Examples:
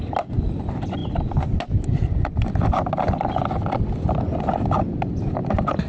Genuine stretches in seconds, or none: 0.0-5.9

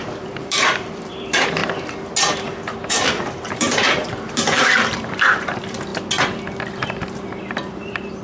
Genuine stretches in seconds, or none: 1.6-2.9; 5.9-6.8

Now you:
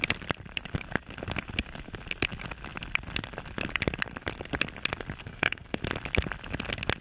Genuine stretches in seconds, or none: 0.0-5.2; 5.8-7.0

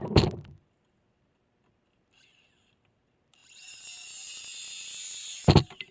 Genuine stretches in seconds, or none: 0.0-5.9

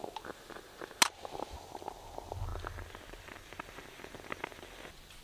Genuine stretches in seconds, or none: 0.0-5.2

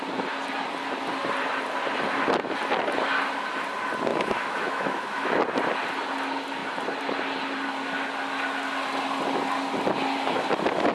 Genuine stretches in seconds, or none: 0.0-4.1; 5.4-10.9